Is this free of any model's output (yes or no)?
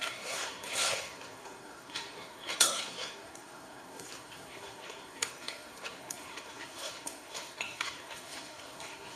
no